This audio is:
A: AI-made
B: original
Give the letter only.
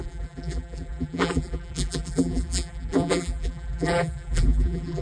A